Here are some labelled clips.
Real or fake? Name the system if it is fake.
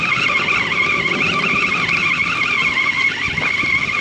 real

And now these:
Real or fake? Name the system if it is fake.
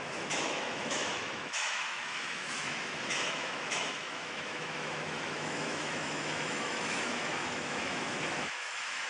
fake, autoencoder, DAC-VAE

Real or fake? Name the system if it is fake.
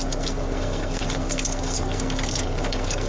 fake, codec, SNAC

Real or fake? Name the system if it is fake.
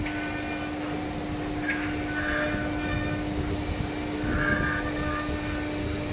real